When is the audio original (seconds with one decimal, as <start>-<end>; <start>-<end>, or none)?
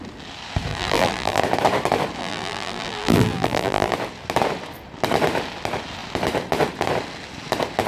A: 0.0-0.7; 1.4-2.2; 3.9-7.9